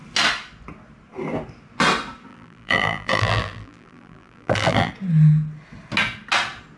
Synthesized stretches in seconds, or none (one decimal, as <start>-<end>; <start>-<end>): 2.3-4.9